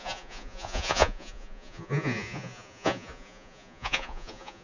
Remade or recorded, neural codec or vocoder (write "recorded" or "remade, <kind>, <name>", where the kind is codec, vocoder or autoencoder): remade, vocoder, Vocos